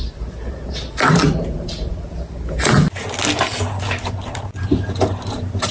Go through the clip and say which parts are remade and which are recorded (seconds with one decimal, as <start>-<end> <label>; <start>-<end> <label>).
0.0-5.7 recorded